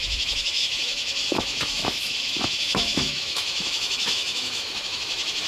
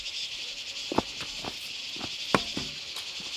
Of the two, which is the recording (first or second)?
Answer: second